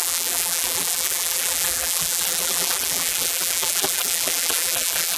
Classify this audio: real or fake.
fake